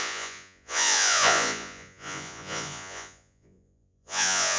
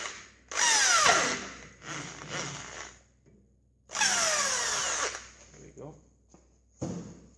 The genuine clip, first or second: second